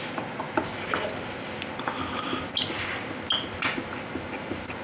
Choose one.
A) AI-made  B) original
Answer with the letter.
B